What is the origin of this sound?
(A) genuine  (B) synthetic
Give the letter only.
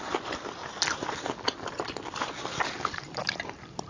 A